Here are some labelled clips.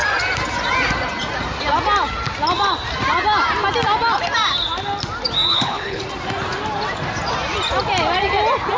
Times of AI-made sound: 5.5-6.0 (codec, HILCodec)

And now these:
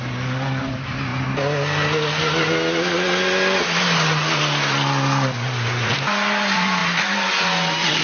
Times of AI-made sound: none

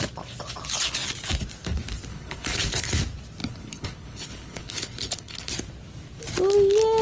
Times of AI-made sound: 2.1-3.0 (codec, HILCodec); 3.4-5.5

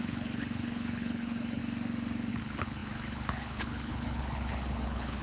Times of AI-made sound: 0.0-1.6 (codec, HILCodec); 2.3-5.2